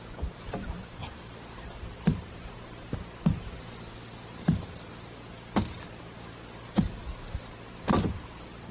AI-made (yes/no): no